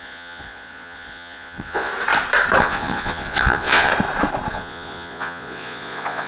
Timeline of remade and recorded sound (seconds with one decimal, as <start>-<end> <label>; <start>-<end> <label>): 0.0-1.9 remade; 1.9-2.6 recorded; 2.6-3.9 remade; 3.9-4.5 recorded; 4.5-6.3 remade